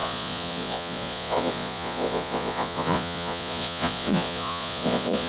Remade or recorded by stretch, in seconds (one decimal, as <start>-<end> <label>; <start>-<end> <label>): 0.0-5.3 remade